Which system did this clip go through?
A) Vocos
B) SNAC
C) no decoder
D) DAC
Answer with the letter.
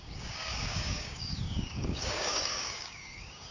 D